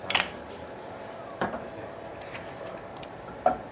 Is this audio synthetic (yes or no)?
yes